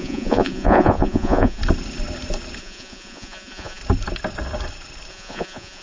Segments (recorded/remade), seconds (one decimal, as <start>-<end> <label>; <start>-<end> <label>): 0.0-1.6 remade; 1.6-2.6 recorded; 2.6-3.8 remade; 3.8-5.1 recorded; 5.1-5.8 remade